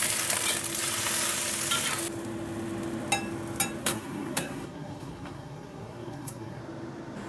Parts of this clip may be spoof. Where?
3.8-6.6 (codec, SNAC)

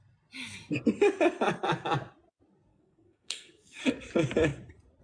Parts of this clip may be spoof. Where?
2.7-3.8 (codec, SNAC)

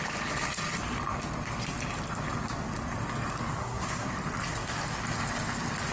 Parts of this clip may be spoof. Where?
3.6-4.1 (codec, SNAC)

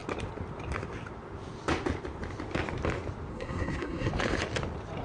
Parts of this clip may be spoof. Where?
3.3-4.1 (codec, SNAC)

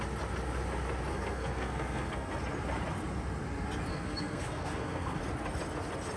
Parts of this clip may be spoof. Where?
1.1-2.4 (codec, SNAC); 3.9-5.2

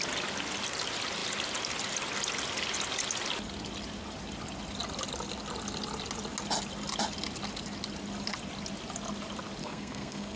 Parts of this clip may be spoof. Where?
9.6-10.4 (codec, SNAC)

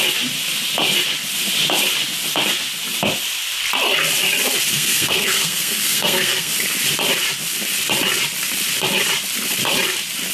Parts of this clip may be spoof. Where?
4.7-6.5 (codec, SNAC)

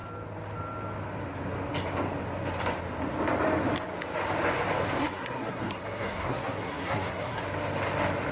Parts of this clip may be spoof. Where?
5.0-7.4 (codec, SNAC)